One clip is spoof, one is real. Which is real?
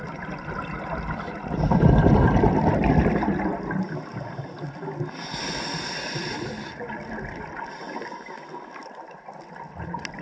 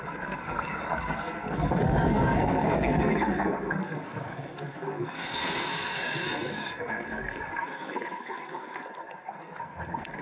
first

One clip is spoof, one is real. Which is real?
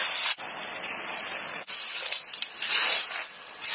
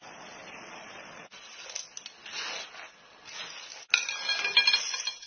second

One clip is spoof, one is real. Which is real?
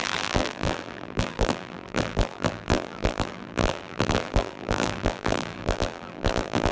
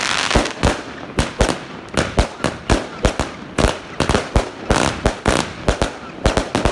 second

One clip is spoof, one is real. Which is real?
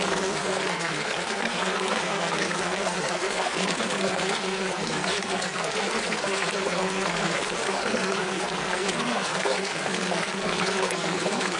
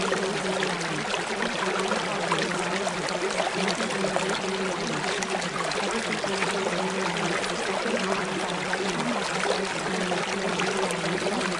second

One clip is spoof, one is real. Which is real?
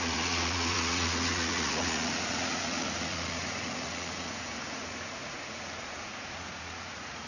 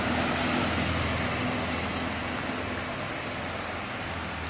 second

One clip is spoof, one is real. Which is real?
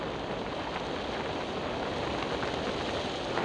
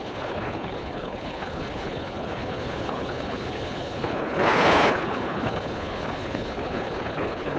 first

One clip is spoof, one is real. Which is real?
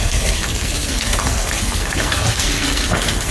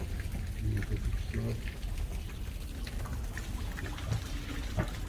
second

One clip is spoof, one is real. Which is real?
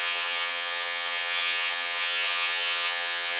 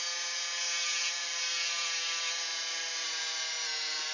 second